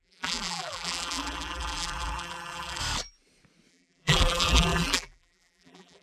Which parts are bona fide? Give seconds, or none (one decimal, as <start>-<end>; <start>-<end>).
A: 2.8-3.7